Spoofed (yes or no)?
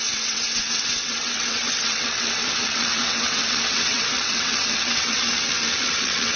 yes